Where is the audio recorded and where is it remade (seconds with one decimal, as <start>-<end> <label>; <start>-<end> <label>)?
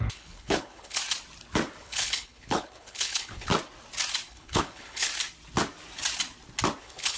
0.0-1.0 remade; 1.0-1.8 recorded; 1.8-3.5 remade; 3.5-4.3 recorded; 4.3-5.1 remade; 5.1-6.8 recorded; 6.8-7.2 remade